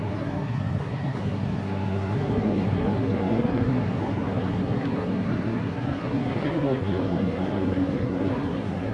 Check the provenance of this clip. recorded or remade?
remade